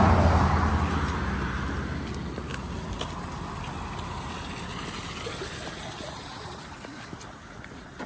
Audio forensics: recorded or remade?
recorded